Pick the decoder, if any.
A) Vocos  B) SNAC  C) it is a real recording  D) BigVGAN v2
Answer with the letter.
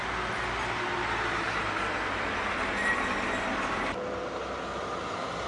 C